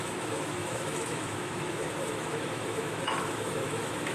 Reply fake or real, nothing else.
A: fake